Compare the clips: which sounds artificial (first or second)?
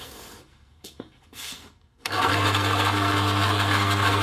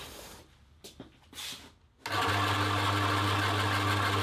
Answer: first